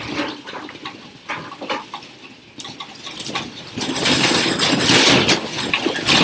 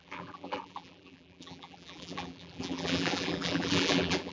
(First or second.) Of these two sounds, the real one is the first